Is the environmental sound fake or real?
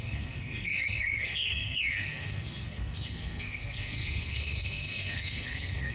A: fake